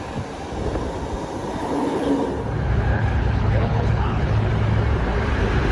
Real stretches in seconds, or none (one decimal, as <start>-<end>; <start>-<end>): 0.0-1.6; 2.1-2.9; 4.5-5.7